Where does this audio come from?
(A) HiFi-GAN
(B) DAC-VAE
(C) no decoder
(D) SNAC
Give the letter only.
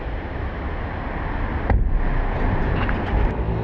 C